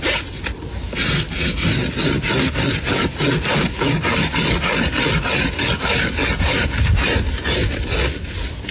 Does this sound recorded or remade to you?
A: recorded